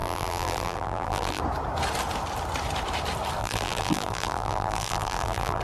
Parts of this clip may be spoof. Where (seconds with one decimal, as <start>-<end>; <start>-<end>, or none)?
0.0-1.4; 3.4-5.6